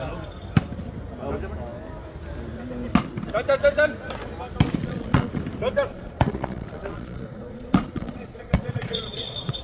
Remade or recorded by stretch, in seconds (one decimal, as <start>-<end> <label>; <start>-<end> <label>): 0.0-4.8 recorded; 4.8-5.4 remade; 5.4-5.9 recorded; 5.9-9.6 remade